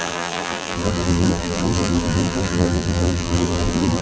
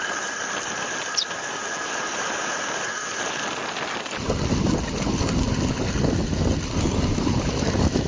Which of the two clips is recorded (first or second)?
second